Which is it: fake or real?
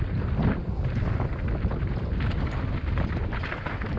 real